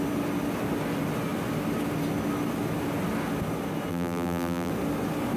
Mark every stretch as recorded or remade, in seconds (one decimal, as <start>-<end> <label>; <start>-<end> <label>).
0.0-3.9 recorded; 3.9-4.7 remade; 4.7-5.4 recorded